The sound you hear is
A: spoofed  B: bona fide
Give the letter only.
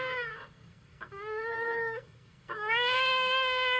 A